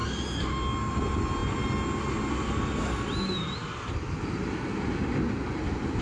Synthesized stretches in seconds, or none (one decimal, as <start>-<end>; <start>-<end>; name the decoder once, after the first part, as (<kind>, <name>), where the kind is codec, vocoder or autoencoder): none